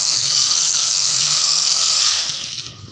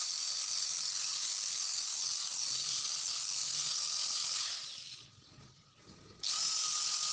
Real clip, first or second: second